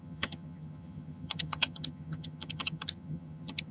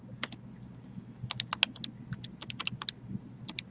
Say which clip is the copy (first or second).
first